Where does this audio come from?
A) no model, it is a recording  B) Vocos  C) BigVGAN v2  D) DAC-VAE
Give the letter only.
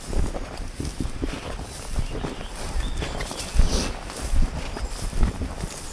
A